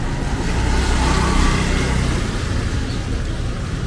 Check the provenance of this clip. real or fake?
real